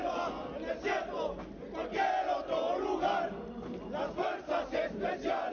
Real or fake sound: real